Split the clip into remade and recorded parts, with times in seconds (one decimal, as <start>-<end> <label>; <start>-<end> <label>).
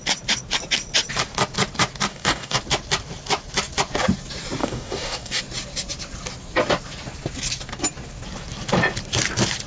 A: 0.0-2.1 recorded; 2.1-2.6 remade; 2.6-4.6 recorded; 4.6-5.4 remade; 5.4-9.7 recorded